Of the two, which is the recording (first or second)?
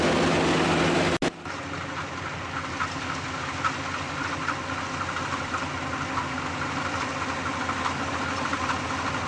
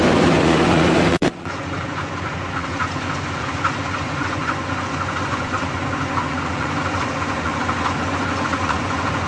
first